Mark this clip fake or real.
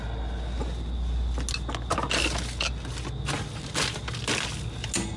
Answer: real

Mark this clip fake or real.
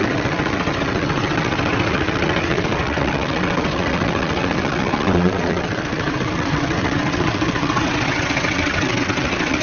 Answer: fake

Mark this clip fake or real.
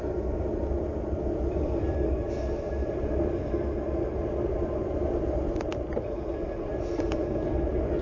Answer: real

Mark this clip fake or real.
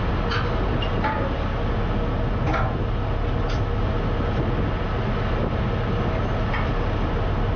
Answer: real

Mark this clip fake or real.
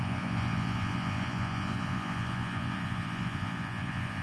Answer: fake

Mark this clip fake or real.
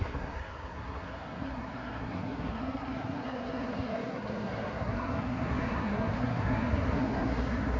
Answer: fake